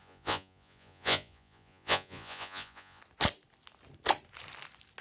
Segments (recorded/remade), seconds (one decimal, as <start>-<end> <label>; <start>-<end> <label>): 0.0-3.0 remade; 3.0-5.0 recorded